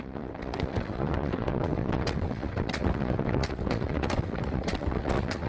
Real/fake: fake